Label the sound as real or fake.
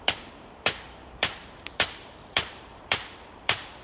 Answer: fake